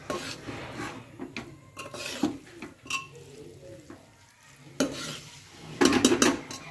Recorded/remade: recorded